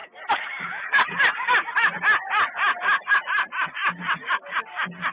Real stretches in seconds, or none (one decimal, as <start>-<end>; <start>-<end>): 0.0-5.1